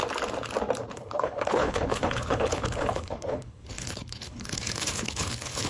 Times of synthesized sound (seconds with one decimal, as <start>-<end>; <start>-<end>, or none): 0.9-5.7